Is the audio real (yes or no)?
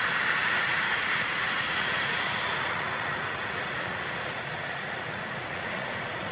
no